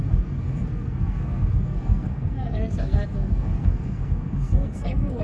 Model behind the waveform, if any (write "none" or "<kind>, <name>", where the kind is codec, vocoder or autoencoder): codec, SNAC